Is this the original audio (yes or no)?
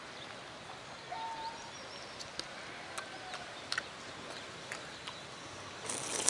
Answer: yes